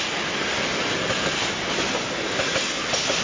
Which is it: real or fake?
real